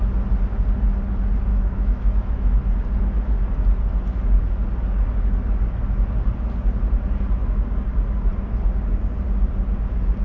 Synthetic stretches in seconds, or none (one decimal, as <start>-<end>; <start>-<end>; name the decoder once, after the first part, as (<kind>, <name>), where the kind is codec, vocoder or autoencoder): 1.5-2.6 (autoencoder, DAC-VAE)